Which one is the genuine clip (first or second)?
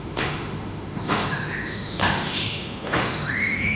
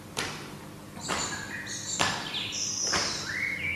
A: second